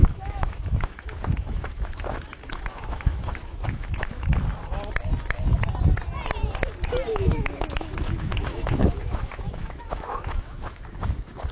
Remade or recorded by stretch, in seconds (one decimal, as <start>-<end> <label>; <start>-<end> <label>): 0.0-4.3 remade; 4.3-7.1 recorded; 7.1-10.8 remade; 10.8-11.5 recorded